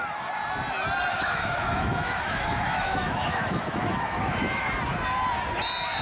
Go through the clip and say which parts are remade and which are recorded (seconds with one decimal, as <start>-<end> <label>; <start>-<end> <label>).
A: 0.0-1.1 recorded; 1.1-4.7 remade; 4.7-6.0 recorded